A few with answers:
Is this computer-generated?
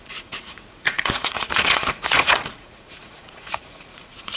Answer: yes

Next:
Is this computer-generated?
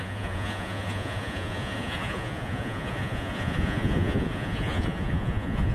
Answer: yes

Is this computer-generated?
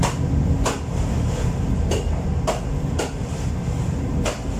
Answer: no